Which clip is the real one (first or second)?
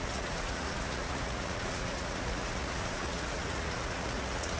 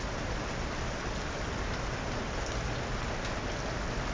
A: second